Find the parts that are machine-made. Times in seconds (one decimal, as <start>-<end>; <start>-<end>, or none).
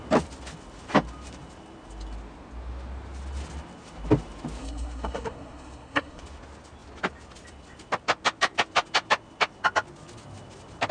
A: 4.6-6.2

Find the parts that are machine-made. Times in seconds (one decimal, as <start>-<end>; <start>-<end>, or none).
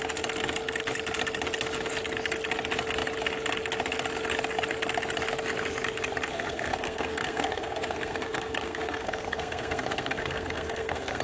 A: 6.3-11.2